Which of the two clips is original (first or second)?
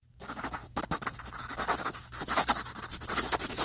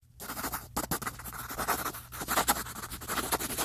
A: second